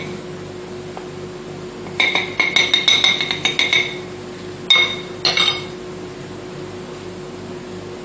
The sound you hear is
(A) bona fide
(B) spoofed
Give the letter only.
A